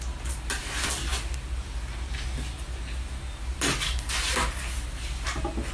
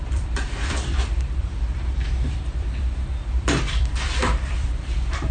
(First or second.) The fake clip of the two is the second